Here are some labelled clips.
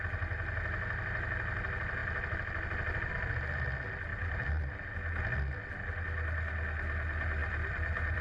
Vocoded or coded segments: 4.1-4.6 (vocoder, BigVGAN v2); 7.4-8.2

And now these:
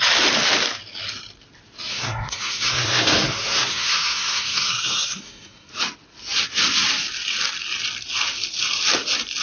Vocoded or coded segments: 1.9-5.7 (codec, SNAC)

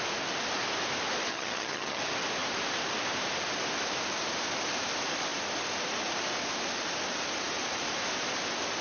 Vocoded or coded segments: 1.3-2.0 (vocoder, HiFi-GAN)

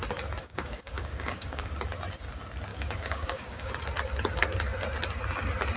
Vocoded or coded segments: 0.4-1.7 (codec, DAC); 2.7-3.7

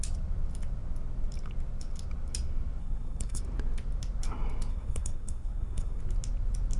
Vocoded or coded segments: 2.8-3.4 (codec, SNAC); 4.7-6.0

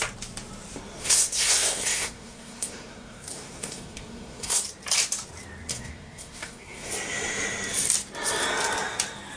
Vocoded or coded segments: 1.0-4.6 (codec, SNAC); 5.7-6.9